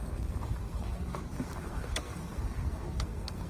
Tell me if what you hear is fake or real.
fake